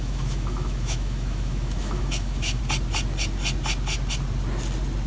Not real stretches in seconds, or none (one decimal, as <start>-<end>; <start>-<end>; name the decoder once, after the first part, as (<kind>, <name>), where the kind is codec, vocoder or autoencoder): 0.0-2.6 (autoencoder, DAC-VAE)